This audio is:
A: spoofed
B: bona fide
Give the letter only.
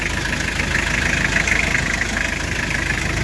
B